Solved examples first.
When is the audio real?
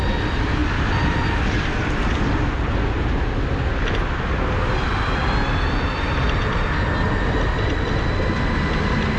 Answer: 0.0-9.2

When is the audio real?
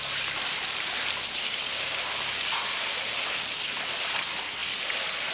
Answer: 0.0-5.3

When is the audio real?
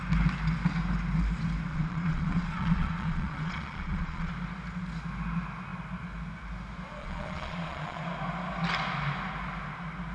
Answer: 0.0-1.7; 4.3-7.0; 8.0-10.1